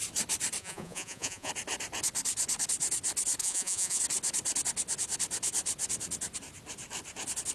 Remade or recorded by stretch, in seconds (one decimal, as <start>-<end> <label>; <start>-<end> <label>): 0.0-0.6 recorded; 0.6-1.5 remade; 1.5-3.4 recorded; 3.4-4.0 remade; 4.0-7.5 recorded